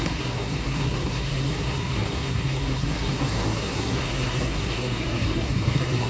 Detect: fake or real fake